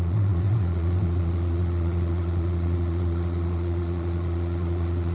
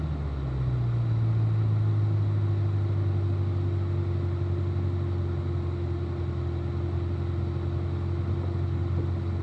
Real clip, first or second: second